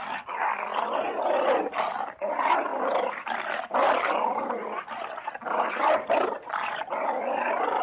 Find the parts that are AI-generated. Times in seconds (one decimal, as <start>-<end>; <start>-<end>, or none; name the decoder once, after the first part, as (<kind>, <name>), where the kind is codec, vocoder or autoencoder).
none